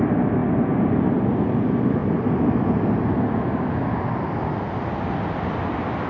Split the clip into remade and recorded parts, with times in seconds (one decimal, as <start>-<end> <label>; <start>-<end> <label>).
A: 0.0-6.1 recorded

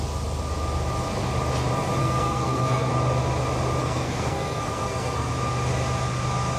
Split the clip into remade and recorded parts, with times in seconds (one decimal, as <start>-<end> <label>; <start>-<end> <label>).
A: 0.0-2.0 recorded; 2.0-2.9 remade; 2.9-3.8 recorded; 3.8-5.3 remade; 5.3-6.6 recorded

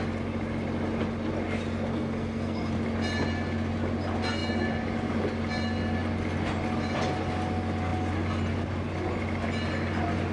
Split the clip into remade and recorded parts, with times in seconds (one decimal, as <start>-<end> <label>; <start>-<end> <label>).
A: 0.0-1.9 recorded; 1.9-2.7 remade; 2.7-10.3 recorded

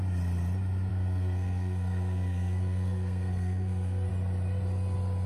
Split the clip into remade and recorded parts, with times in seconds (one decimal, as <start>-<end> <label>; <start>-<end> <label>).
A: 0.0-0.9 recorded; 0.9-4.1 remade; 4.1-5.3 recorded

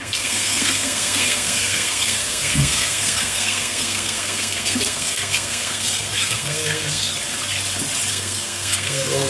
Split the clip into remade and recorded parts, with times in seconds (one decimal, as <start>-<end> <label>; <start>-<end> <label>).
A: 0.0-7.1 remade; 7.1-8.1 recorded; 8.1-9.3 remade